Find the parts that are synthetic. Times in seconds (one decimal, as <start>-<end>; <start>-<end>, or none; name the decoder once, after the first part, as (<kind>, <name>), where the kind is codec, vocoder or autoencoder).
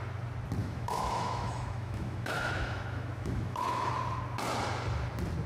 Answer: 0.6-3.9 (autoencoder, DAC-VAE)